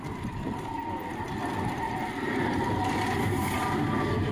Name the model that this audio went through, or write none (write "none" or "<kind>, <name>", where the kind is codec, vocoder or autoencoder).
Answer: none